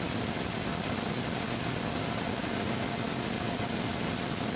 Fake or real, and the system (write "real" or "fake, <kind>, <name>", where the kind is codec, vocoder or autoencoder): real